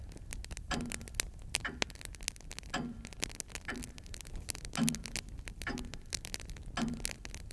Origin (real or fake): real